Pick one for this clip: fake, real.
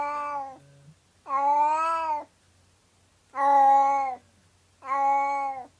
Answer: real